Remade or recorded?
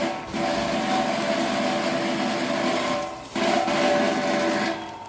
recorded